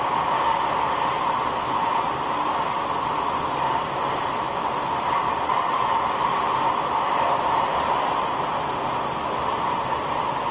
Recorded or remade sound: recorded